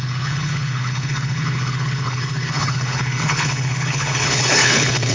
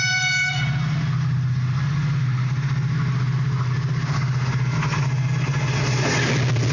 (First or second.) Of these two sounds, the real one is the second